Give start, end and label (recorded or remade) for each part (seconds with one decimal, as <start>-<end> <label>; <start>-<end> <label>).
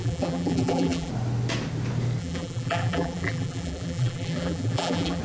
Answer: 0.0-1.1 remade; 1.1-2.2 recorded; 2.2-5.2 remade